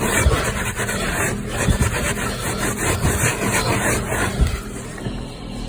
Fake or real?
fake